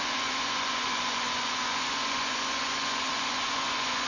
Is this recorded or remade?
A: remade